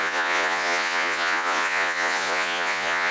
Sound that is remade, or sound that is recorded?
remade